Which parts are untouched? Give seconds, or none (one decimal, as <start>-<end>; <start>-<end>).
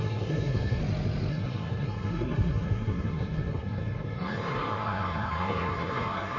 0.8-1.3